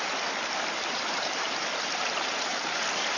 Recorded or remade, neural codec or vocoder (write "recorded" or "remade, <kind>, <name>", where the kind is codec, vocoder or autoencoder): remade, vocoder, BigVGAN v2